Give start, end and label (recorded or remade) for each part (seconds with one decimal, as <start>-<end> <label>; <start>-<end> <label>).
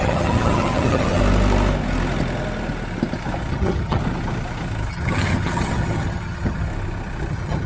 0.0-1.2 remade; 1.2-3.5 recorded; 3.5-4.0 remade; 4.0-4.9 recorded; 4.9-6.7 remade; 6.7-7.3 recorded; 7.3-7.7 remade